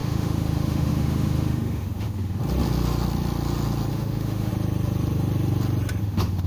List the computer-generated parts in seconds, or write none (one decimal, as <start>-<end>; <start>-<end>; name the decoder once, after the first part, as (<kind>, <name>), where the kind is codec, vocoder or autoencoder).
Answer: 0.0-2.4 (autoencoder, DAC-VAE); 3.9-4.5; 6.0-6.5